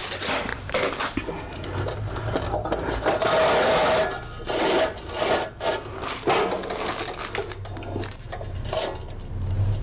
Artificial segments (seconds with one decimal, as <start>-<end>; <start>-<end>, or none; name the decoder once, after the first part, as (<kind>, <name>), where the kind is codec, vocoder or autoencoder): 0.5-1.4 (vocoder, BigVGAN v2)